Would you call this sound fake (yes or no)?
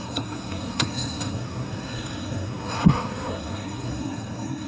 yes